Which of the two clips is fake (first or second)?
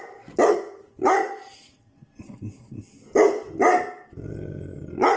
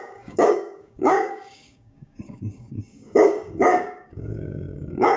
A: second